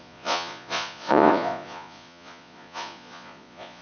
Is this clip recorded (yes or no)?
no